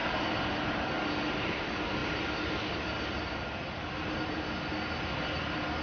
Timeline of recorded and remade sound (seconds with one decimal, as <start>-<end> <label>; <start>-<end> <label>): 0.0-5.8 recorded